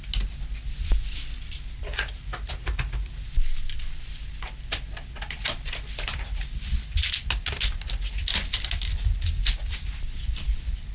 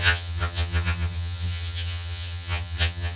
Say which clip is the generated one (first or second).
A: second